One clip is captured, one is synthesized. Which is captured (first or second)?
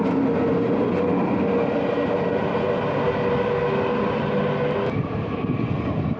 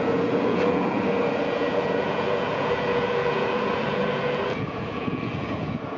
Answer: first